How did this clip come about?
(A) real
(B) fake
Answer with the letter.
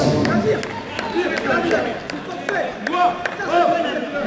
A